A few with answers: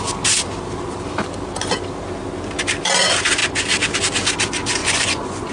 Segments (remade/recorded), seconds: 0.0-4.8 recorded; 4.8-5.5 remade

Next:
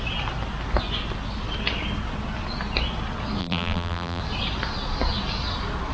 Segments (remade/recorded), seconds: 0.0-3.4 recorded; 3.4-4.2 remade; 4.2-5.9 recorded

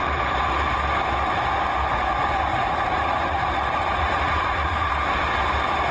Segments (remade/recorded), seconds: 0.0-2.5 recorded; 2.5-4.9 remade; 4.9-5.9 recorded

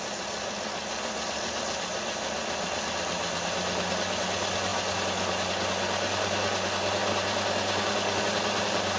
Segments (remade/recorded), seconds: 0.0-9.0 recorded

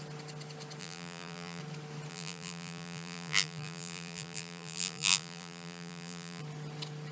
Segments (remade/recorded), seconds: 0.0-0.8 recorded; 0.8-1.6 remade; 1.6-2.1 recorded; 2.1-6.4 remade; 6.4-7.1 recorded

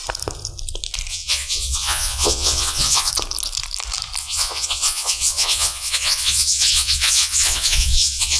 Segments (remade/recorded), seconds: 0.0-1.1 recorded; 1.1-3.1 remade; 3.1-4.2 recorded; 4.2-8.4 remade

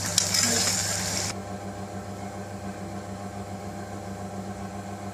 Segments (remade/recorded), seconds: 0.0-5.1 recorded

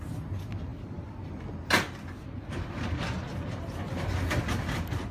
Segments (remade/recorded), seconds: 0.0-5.1 recorded